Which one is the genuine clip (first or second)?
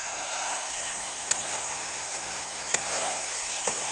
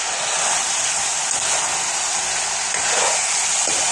second